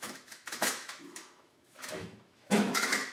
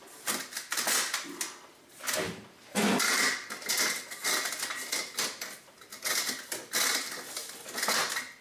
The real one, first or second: second